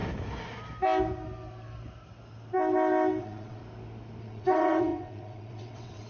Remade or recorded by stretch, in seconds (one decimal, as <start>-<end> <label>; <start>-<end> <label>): 0.0-3.2 recorded; 3.2-3.6 remade; 3.6-4.2 recorded; 4.2-6.1 remade